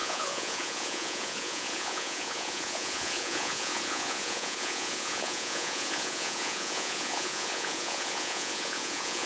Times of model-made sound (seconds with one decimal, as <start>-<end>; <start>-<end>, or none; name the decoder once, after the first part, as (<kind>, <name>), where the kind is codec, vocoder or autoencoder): 0.0-9.3 (vocoder, Vocos)